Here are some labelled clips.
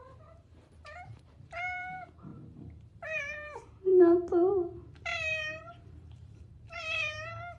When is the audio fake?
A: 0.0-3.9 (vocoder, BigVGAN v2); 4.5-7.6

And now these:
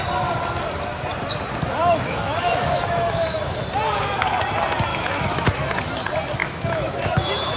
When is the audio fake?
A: 1.8-3.6 (autoencoder, DAC-VAE); 4.9-5.8; 6.4-7.6

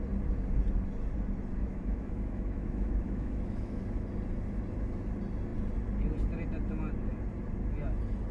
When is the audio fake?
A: 1.6-3.8 (autoencoder, DAC-VAE)

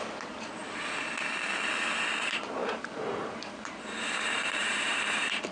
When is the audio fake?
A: 2.6-5.5 (vocoder, BigVGAN v2)

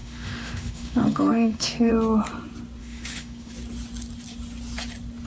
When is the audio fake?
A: 0.0-1.9 (autoencoder, DAC-VAE); 2.8-3.5